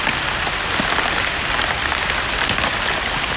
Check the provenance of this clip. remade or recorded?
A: recorded